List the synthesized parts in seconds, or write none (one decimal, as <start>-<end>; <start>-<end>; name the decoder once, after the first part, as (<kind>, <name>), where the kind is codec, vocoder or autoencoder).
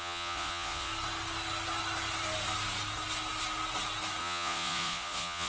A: 0.0-0.9 (vocoder, Vocos); 4.2-5.5